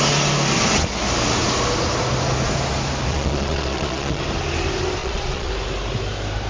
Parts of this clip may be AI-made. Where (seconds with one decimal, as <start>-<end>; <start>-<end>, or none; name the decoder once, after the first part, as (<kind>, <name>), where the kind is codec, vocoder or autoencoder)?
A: 3.1-4.2 (vocoder, Vocos); 5.0-5.5